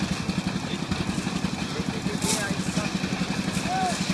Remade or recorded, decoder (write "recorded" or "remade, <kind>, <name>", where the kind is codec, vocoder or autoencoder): recorded